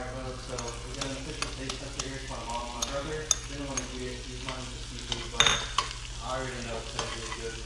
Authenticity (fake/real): real